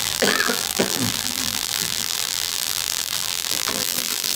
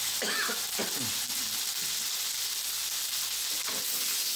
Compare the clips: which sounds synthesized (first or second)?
first